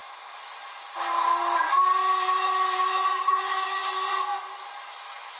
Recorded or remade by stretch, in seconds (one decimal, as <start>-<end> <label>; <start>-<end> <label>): 0.0-3.2 recorded; 3.2-3.8 remade; 3.8-4.9 recorded; 4.9-5.4 remade